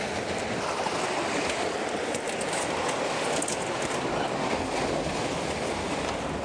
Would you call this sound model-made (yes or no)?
no